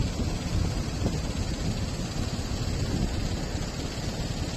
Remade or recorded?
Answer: recorded